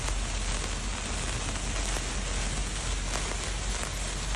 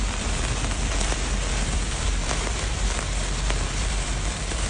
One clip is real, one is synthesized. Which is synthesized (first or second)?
second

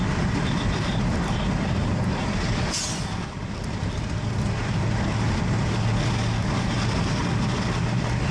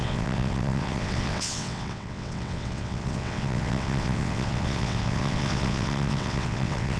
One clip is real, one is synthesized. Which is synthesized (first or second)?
second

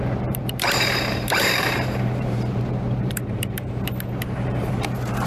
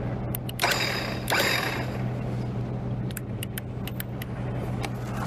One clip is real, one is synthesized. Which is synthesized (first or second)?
first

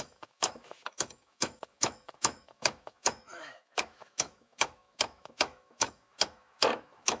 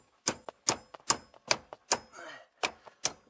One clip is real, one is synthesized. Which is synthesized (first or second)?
first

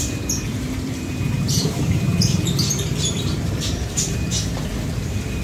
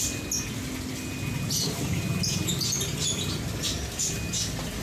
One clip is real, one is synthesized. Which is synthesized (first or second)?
first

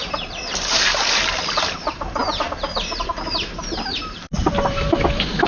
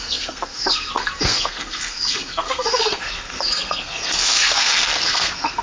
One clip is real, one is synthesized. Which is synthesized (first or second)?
second